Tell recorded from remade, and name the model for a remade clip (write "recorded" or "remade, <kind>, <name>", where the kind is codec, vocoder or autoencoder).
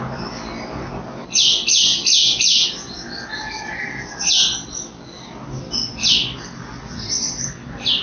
recorded